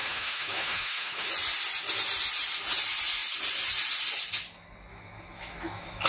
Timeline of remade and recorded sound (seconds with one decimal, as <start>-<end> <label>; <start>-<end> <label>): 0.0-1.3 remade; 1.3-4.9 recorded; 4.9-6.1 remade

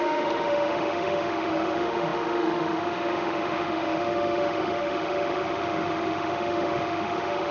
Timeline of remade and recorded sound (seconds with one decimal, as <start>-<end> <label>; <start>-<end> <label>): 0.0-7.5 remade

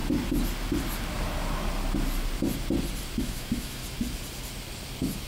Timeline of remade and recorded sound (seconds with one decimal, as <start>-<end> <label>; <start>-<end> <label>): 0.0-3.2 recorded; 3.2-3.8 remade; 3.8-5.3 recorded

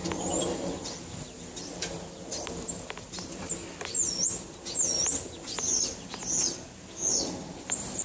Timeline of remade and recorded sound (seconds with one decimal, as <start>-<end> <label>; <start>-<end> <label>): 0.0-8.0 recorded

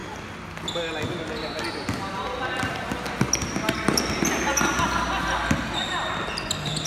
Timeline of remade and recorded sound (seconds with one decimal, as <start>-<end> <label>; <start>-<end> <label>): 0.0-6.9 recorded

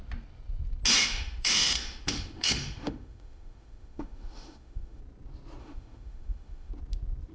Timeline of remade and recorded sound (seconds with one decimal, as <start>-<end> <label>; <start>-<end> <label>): 0.0-1.0 recorded; 1.0-5.0 remade; 5.0-5.6 recorded; 5.6-6.7 remade; 6.7-7.3 recorded

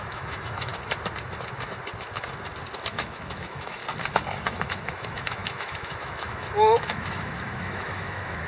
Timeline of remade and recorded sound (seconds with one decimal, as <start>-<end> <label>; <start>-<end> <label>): 0.0-0.7 remade; 0.7-2.9 recorded; 2.9-3.8 remade; 3.8-4.5 recorded; 4.5-8.5 remade

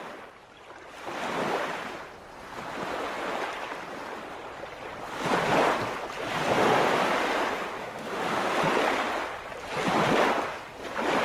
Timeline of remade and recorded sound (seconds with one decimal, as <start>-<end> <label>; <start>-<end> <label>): 0.0-7.8 recorded; 7.8-8.5 remade; 8.5-11.2 recorded